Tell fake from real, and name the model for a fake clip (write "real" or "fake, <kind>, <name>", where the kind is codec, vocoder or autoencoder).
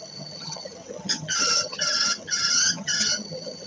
fake, vocoder, HiFi-GAN